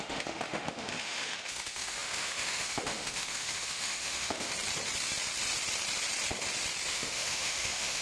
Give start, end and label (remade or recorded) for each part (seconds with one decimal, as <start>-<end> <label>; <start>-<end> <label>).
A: 0.0-4.5 remade; 4.5-6.9 recorded; 6.9-8.0 remade